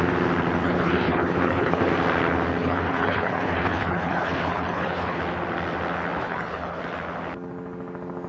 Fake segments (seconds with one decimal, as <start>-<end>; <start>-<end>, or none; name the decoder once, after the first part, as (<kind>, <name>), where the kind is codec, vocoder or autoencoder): 0.6-1.9 (codec, HILCodec); 2.6-5.2; 6.2-6.8